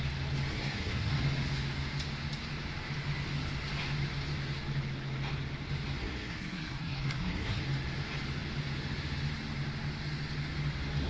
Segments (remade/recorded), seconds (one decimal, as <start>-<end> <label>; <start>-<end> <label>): 0.0-0.5 recorded; 0.5-1.2 remade; 1.2-6.0 recorded; 6.0-7.6 remade; 7.6-11.1 recorded